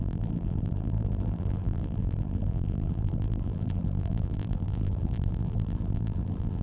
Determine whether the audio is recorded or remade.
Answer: remade